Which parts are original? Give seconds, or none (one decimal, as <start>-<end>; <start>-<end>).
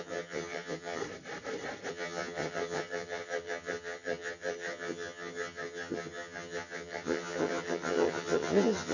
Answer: 1.0-1.9